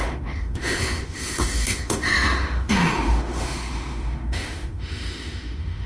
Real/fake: fake